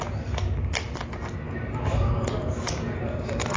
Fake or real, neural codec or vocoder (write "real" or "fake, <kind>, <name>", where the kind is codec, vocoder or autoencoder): real